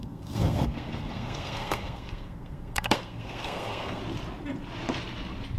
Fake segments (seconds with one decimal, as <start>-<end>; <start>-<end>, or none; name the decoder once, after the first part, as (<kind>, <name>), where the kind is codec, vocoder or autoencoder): 0.0-4.0 (codec, SNAC)